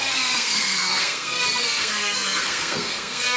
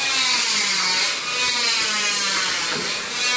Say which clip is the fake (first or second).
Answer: first